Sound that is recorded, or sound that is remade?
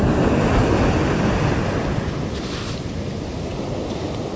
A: recorded